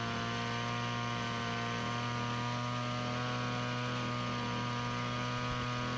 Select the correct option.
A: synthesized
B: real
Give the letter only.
B